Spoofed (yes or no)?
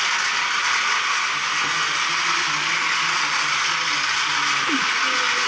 no